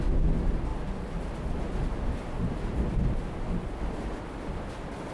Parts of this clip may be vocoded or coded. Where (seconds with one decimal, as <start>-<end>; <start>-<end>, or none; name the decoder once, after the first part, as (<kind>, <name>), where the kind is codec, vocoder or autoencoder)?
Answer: none